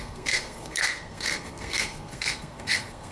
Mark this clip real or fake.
fake